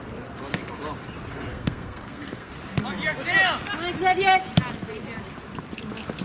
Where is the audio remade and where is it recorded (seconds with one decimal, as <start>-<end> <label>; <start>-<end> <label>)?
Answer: 0.0-1.5 recorded; 1.5-2.5 remade; 2.5-6.2 recorded